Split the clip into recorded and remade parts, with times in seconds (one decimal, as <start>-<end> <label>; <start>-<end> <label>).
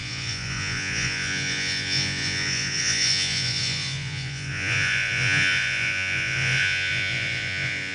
0.0-7.9 remade